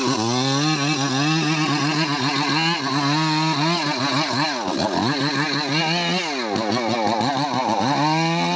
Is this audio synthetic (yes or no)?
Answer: no